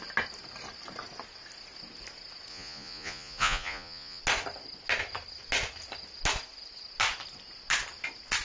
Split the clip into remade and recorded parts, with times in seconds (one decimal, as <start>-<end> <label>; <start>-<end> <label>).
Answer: 0.0-2.5 recorded; 2.5-4.2 remade; 4.2-8.4 recorded